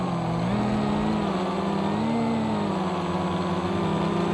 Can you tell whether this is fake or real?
real